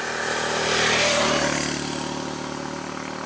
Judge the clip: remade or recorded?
recorded